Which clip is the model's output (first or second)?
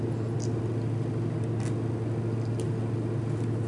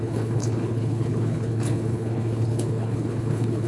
second